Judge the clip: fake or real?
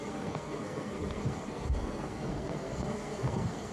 fake